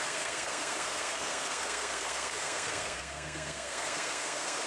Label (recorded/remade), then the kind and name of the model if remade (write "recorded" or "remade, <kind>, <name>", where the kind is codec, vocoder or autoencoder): remade, codec, SNAC